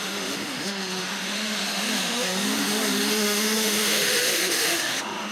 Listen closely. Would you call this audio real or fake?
fake